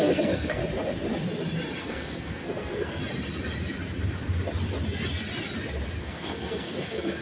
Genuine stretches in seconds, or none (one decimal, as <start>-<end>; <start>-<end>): 0.6-1.8; 3.0-6.0